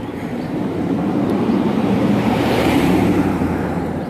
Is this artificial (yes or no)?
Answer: yes